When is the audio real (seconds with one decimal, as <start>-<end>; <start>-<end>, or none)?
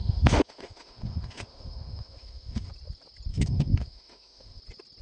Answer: 2.7-3.3; 4.6-5.0